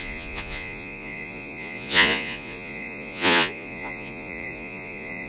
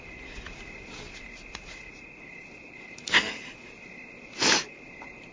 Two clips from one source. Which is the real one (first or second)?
second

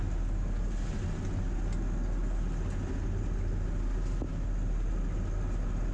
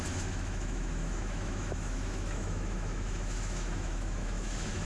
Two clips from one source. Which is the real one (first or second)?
first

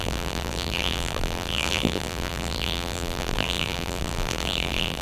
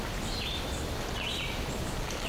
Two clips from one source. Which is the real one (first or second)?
second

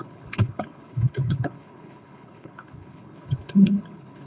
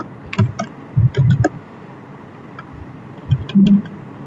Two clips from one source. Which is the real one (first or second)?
second